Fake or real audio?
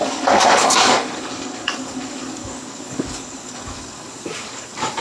fake